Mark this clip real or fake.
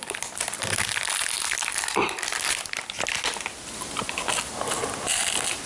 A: real